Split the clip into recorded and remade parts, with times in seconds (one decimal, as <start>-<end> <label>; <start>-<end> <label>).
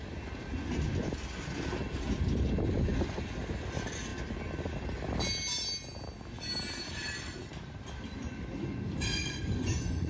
0.0-9.1 recorded; 9.1-10.1 remade